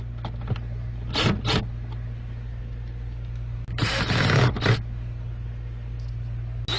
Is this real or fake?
real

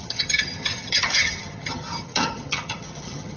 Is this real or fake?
fake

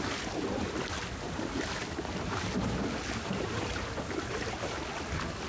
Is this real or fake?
real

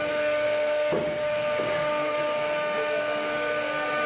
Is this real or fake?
fake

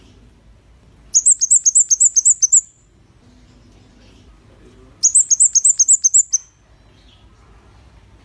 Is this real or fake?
real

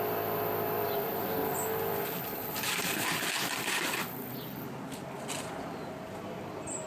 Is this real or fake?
real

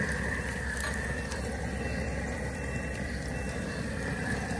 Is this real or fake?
fake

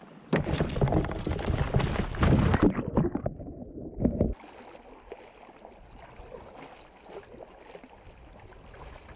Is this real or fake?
real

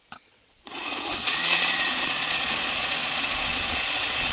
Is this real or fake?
fake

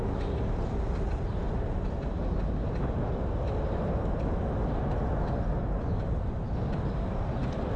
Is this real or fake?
real